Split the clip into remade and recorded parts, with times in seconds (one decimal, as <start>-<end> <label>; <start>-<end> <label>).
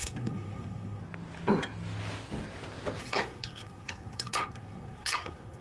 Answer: 0.0-1.0 remade; 1.0-3.0 recorded; 3.0-5.6 remade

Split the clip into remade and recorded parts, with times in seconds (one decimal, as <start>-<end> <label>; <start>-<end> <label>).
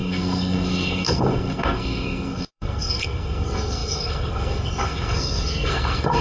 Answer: 0.0-6.2 remade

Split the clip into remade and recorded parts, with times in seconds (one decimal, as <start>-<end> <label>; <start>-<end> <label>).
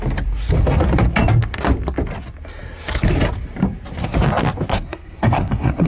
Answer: 0.0-4.7 recorded; 4.7-5.9 remade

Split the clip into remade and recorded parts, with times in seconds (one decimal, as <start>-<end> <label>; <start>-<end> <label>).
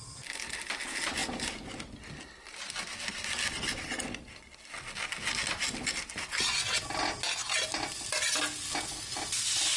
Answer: 0.0-9.8 recorded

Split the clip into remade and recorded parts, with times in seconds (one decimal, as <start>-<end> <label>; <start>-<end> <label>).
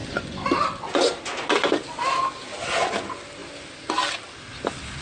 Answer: 0.0-0.5 remade; 0.5-5.0 recorded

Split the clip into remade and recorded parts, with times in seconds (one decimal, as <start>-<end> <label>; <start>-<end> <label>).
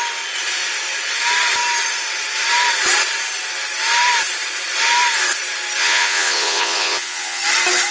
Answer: 0.0-5.8 recorded; 5.8-7.4 remade; 7.4-7.9 recorded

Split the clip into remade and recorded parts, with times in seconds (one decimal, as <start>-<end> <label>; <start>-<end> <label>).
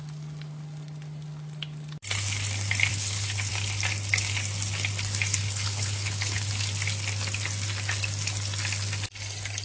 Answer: 0.0-2.9 recorded; 2.9-3.5 remade; 3.5-5.4 recorded; 5.4-6.5 remade; 6.5-9.6 recorded